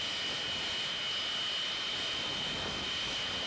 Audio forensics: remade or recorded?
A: recorded